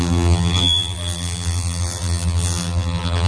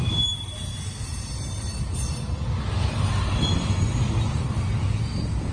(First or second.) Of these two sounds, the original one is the second